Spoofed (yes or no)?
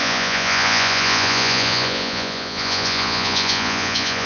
yes